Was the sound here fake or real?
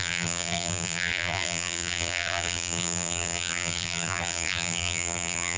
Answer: fake